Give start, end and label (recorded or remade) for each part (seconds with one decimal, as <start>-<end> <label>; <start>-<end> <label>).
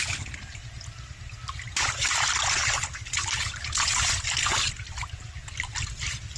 0.0-6.4 recorded